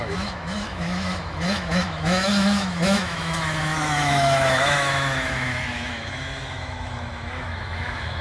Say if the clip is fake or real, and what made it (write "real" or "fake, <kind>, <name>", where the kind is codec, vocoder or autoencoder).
fake, autoencoder, DAC-VAE